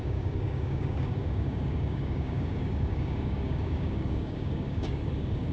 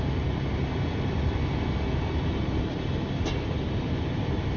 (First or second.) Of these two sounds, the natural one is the second